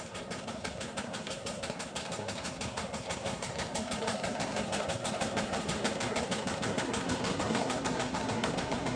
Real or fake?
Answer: fake